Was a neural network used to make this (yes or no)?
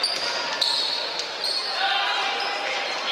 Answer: no